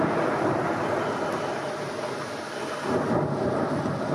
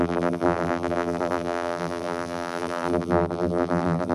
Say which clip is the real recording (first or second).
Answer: first